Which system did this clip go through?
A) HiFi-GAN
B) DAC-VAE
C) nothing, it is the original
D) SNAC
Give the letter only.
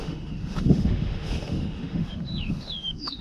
B